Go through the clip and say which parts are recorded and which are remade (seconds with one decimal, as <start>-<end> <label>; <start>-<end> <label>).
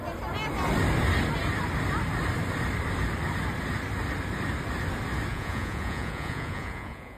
0.0-5.3 recorded; 5.3-7.2 remade